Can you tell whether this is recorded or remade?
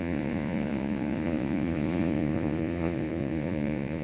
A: remade